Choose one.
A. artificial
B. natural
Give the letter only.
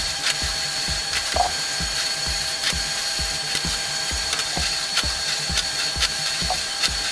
A